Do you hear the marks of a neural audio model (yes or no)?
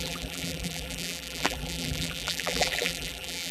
yes